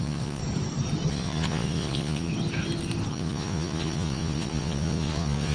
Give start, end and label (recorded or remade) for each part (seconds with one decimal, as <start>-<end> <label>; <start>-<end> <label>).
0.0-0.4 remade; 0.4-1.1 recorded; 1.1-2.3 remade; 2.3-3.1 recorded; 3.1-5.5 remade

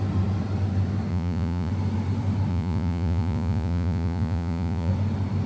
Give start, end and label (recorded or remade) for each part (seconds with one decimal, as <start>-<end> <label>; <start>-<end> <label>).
0.0-1.1 recorded; 1.1-1.7 remade; 1.7-2.5 recorded; 2.5-4.9 remade; 4.9-5.5 recorded

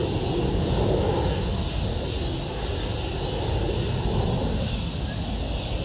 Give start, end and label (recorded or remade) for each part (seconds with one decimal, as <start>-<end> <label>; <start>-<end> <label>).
0.0-5.8 recorded

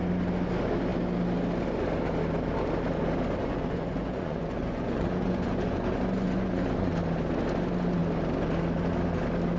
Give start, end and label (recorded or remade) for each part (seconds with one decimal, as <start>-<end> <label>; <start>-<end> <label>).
0.0-3.4 recorded; 3.4-6.9 remade; 6.9-9.6 recorded

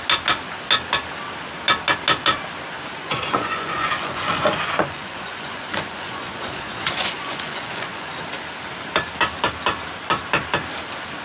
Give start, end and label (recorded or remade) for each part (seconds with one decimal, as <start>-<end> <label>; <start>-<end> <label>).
0.0-3.0 recorded; 3.0-8.1 remade; 8.1-11.2 recorded

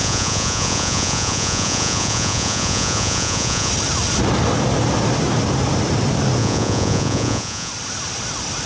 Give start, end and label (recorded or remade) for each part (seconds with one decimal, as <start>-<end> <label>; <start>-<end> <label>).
0.0-3.7 remade; 3.7-6.4 recorded; 6.4-7.7 remade; 7.7-8.7 recorded